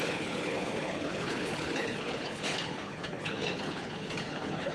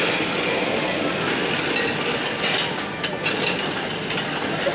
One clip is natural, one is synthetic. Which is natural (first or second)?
second